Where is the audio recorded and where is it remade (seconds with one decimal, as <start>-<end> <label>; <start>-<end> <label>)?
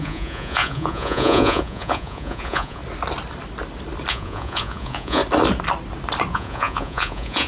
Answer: 0.0-2.8 remade; 2.8-4.1 recorded; 4.1-5.2 remade; 5.2-6.3 recorded; 6.3-7.5 remade